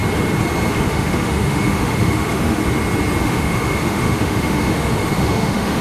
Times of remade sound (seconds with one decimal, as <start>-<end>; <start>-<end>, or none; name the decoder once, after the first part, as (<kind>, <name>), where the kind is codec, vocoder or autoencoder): 0.7-2.6 (autoencoder, DAC-VAE); 3.2-5.8